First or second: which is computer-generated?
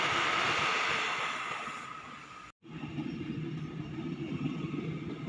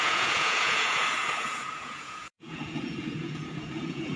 second